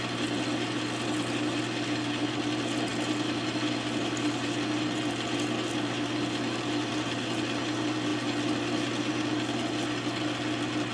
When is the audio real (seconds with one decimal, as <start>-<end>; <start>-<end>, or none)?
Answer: 0.0-10.9